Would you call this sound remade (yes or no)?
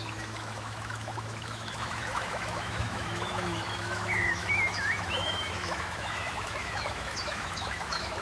yes